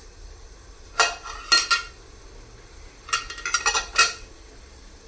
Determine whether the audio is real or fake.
real